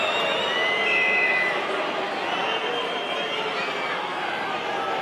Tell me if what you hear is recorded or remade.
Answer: recorded